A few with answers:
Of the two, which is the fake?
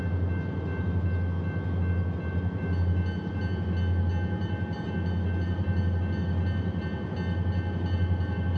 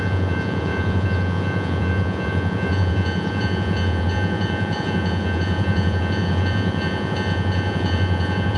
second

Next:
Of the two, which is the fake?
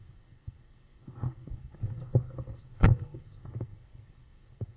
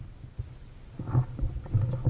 first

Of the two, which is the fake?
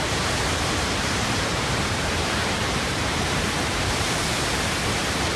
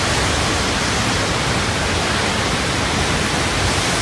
first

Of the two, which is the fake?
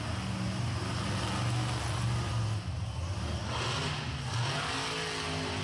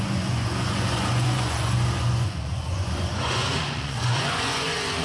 second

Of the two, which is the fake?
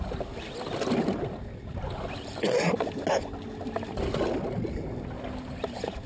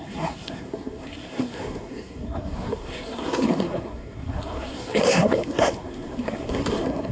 second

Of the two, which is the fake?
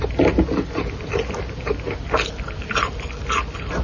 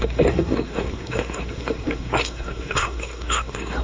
second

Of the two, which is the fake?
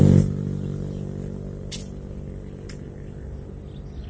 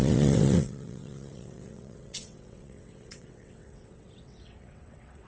second